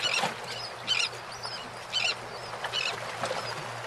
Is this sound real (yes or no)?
yes